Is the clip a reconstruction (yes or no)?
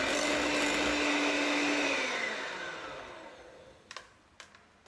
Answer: no